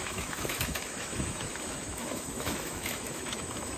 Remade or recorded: remade